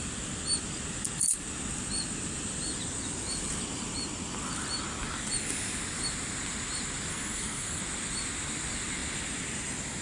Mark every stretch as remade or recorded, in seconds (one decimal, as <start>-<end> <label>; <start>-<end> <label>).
0.0-7.1 recorded; 7.1-7.8 remade; 7.8-10.0 recorded